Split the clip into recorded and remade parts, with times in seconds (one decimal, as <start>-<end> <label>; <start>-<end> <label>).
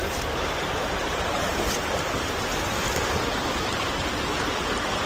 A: 0.0-5.1 recorded